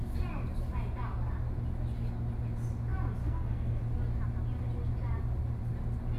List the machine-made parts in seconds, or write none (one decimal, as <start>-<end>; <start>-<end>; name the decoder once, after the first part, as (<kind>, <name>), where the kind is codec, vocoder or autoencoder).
3.2-3.8 (codec, SNAC)